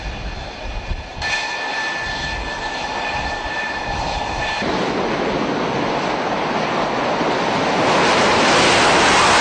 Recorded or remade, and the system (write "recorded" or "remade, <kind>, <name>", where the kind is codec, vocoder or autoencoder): recorded